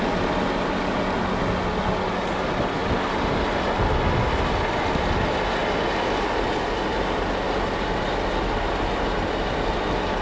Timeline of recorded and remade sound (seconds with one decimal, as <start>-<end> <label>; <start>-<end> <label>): 0.0-10.2 recorded